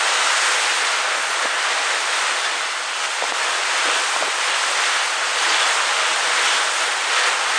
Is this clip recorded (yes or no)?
yes